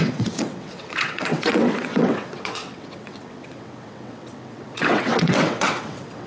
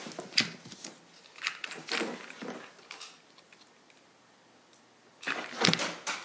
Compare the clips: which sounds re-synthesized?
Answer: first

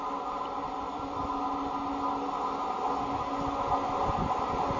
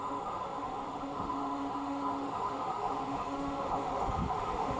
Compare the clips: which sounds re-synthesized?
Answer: second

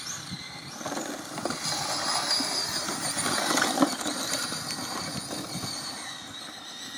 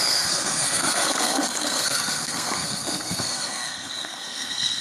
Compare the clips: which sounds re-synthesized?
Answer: second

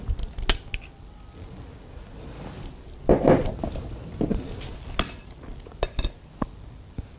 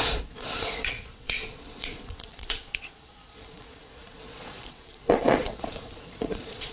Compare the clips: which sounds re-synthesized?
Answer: second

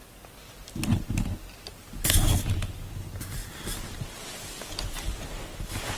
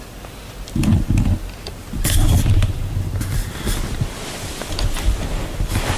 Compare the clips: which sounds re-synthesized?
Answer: second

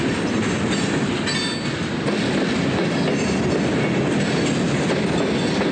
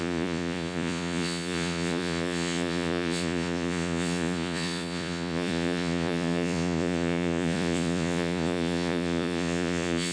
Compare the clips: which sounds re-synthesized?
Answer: second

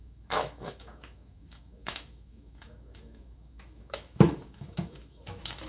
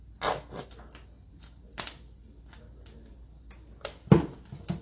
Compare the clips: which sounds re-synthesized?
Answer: first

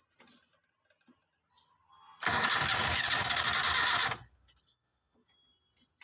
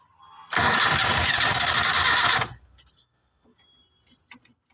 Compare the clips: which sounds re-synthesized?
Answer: second